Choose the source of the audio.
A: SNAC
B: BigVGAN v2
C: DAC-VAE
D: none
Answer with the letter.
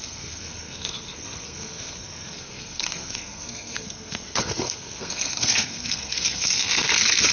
A